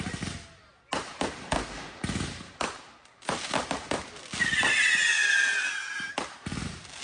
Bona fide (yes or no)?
yes